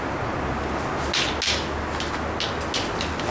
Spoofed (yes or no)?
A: no